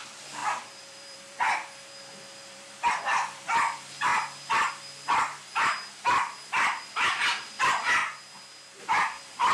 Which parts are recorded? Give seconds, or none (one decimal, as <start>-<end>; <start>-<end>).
4.1-4.7; 8.0-8.8